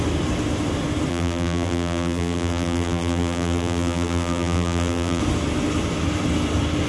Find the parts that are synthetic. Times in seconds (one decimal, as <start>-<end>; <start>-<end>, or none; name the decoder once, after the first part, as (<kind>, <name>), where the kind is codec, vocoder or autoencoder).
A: 1.1-5.2 (vocoder, BigVGAN v2)

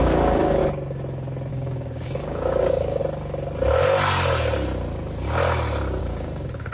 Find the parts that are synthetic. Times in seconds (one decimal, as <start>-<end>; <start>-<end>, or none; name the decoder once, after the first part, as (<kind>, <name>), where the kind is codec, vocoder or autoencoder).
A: 0.0-0.6 (codec, DAC); 1.5-3.0; 6.0-6.7

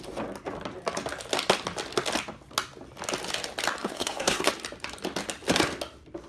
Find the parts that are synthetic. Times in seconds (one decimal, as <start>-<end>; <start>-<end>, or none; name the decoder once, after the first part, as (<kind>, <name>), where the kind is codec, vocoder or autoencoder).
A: 3.8-4.5 (codec, SNAC)